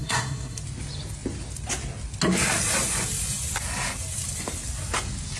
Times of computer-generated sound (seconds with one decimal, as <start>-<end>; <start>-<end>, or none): 0.0-0.6